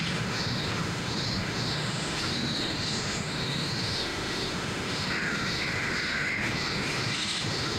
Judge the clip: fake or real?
fake